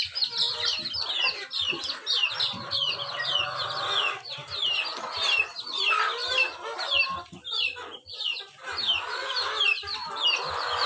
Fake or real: real